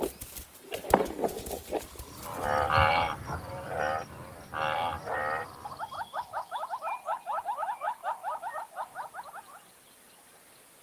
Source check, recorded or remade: remade